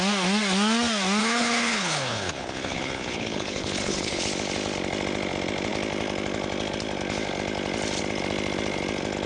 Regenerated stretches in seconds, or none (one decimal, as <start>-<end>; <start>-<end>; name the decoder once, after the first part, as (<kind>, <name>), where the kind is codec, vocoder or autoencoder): 1.2-4.2 (codec, HILCodec)